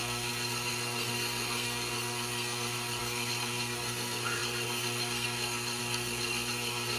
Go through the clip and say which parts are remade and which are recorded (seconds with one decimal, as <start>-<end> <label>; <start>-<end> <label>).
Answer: 0.0-7.0 remade